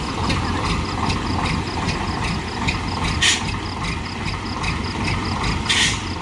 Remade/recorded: recorded